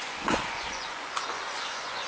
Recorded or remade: remade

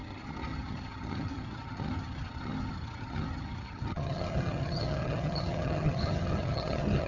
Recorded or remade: remade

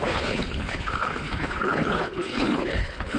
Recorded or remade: remade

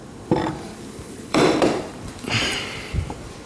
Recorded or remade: remade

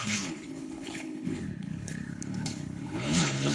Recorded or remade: remade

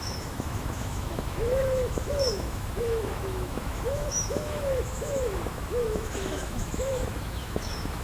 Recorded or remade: remade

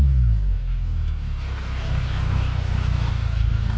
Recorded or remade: remade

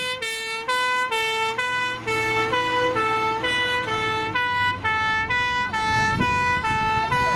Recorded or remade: recorded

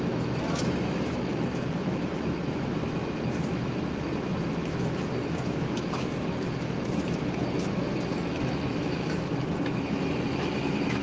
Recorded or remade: remade